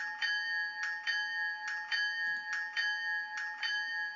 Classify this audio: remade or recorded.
recorded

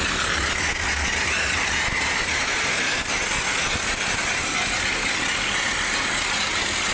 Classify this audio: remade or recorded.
recorded